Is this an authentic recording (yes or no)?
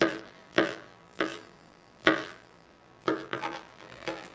no